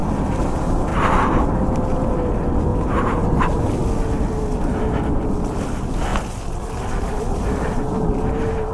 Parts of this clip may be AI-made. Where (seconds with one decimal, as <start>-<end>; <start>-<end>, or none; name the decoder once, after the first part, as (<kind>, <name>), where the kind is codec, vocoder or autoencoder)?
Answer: 0.9-1.5 (vocoder, BigVGAN v2); 2.7-3.6